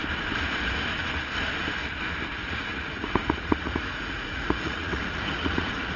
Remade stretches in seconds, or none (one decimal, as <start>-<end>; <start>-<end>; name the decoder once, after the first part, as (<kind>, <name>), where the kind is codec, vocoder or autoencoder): 2.4-6.0 (vocoder, Vocos)